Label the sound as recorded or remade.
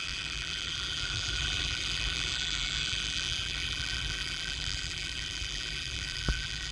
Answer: remade